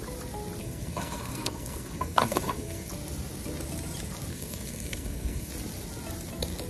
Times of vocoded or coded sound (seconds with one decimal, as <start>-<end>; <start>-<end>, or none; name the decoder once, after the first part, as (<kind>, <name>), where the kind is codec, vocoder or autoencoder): 0.6-2.9 (codec, SNAC); 4.3-5.5